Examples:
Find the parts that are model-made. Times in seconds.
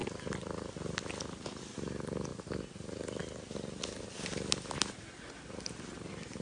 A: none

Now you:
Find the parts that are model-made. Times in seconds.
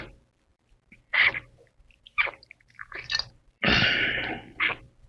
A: 0.5-3.6 (vocoder, BigVGAN v2)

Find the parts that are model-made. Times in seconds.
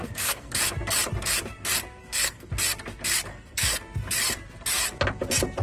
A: 0.0-0.6 (codec, SNAC); 2.0-2.5; 3.3-3.8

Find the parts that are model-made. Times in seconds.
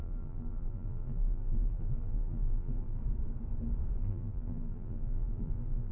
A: 0.0-3.0 (vocoder, BigVGAN v2); 4.0-5.9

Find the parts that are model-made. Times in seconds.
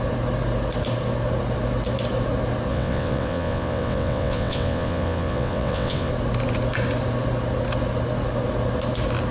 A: 2.7-6.1 (vocoder, WaveNeXt)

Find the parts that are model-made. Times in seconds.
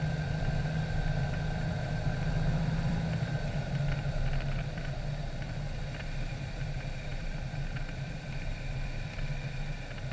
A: 0.0-9.3 (vocoder, BigVGAN v2)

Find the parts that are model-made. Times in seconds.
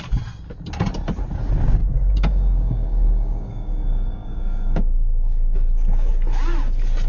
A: 1.8-6.1 (codec, DAC)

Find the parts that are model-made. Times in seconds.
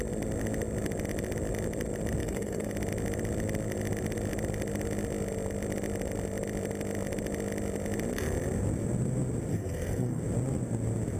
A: 2.2-2.7 (codec, SNAC); 9.5-10.2